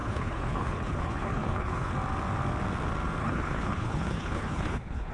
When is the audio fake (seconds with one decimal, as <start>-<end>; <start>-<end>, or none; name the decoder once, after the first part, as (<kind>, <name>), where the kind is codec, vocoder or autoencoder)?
0.0-1.9 (codec, HILCodec); 3.2-5.1